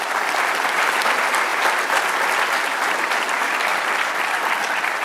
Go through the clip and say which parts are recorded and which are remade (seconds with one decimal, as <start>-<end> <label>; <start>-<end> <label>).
0.0-5.0 recorded